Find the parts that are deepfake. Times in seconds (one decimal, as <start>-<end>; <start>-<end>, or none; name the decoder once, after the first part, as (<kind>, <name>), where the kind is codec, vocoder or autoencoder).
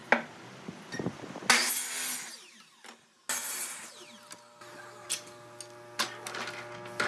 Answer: none